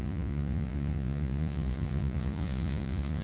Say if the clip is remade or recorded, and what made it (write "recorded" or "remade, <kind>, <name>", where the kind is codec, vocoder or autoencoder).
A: remade, vocoder, Vocos